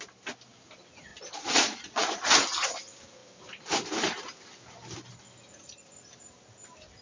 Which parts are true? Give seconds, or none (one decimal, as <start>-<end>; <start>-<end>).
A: 0.0-1.1; 2.1-7.0